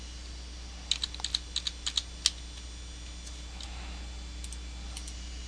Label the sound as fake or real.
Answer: real